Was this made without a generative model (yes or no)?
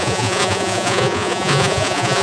no